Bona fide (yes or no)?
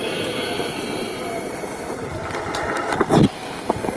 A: yes